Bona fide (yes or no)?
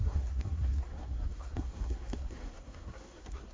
no